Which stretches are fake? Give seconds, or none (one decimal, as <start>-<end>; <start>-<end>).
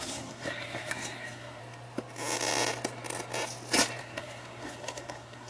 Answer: 0.0-1.6; 4.0-5.5